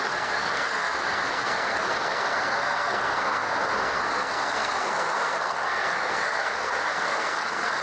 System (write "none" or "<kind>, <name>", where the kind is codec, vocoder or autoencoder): codec, SNAC